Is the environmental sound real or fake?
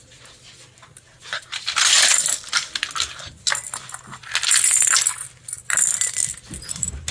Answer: real